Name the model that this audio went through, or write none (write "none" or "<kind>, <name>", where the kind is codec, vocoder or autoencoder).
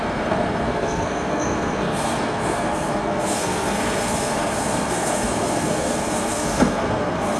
codec, SNAC